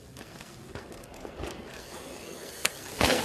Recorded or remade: remade